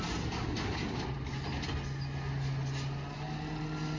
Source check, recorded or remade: recorded